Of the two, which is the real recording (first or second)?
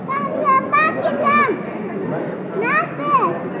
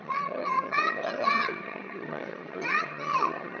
first